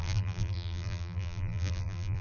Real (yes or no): no